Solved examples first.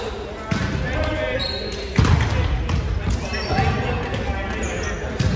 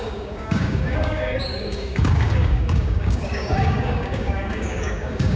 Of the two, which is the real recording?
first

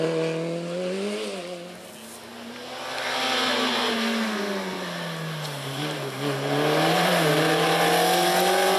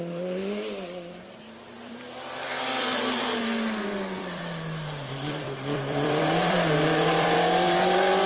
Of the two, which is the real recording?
first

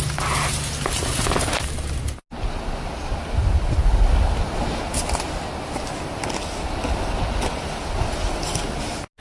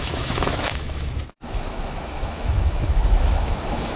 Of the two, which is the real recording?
first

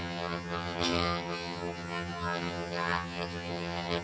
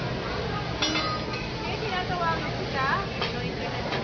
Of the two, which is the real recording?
second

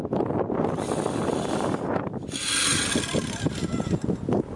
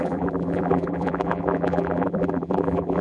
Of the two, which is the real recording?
first